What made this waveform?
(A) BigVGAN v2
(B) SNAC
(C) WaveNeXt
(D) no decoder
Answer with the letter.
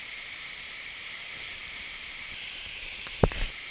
A